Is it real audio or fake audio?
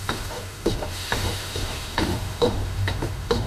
fake